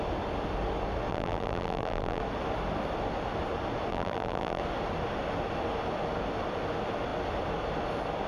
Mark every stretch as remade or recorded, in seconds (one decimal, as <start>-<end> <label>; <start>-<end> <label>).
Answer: 0.0-1.1 recorded; 1.1-2.2 remade; 2.2-3.9 recorded; 3.9-4.6 remade; 4.6-8.3 recorded